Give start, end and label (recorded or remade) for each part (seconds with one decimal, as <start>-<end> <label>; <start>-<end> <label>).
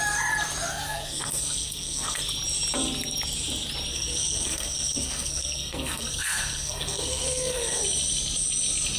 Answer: 0.0-0.7 recorded; 0.7-2.2 remade; 2.2-3.9 recorded; 3.9-7.8 remade; 7.8-9.0 recorded